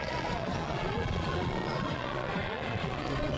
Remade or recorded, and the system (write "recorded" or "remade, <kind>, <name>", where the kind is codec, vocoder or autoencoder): remade, vocoder, Vocos